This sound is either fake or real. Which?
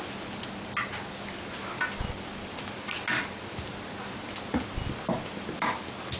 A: real